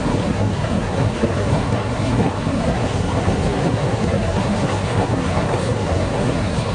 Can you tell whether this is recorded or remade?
remade